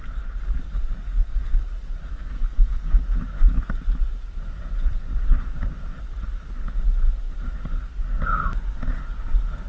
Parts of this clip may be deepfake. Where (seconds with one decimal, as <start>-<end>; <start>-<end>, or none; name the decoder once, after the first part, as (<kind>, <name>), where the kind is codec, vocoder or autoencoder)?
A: 1.0-1.6 (codec, SNAC); 2.1-3.0